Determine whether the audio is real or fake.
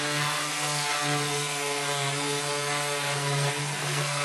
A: fake